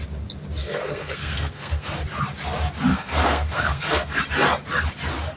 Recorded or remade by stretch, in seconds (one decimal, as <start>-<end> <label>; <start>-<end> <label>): 0.0-0.6 recorded; 0.6-1.9 remade; 1.9-2.9 recorded; 2.9-4.2 remade; 4.2-5.4 recorded